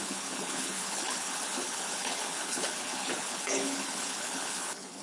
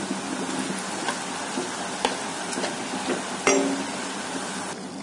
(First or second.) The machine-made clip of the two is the first